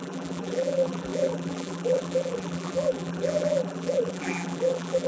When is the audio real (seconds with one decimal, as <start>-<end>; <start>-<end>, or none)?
none